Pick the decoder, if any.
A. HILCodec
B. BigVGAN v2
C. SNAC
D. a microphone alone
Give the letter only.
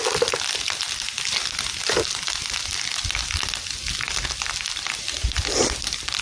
D